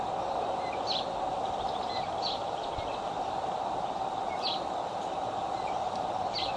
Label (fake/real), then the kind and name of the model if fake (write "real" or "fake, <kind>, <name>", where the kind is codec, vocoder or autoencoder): fake, vocoder, BigVGAN v2